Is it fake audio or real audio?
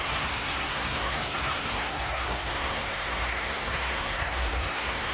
fake